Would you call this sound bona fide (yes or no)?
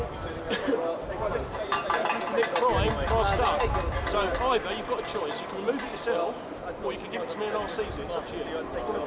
yes